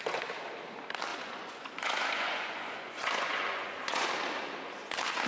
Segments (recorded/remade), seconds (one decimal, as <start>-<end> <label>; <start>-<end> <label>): 0.0-1.1 recorded; 1.1-4.1 remade; 4.1-5.3 recorded